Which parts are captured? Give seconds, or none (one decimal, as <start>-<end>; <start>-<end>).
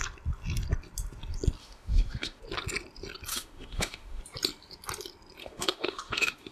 0.0-1.6; 2.4-3.3; 4.2-5.4